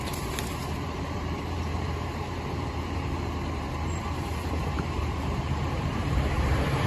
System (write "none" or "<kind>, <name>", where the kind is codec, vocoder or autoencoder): vocoder, BigVGAN v2